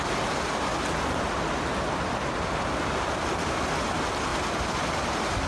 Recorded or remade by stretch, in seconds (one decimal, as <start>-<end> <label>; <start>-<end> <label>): 0.0-5.5 recorded